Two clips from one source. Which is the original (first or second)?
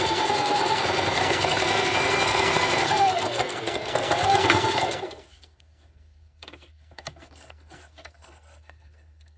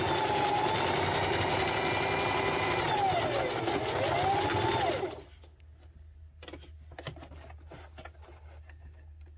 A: second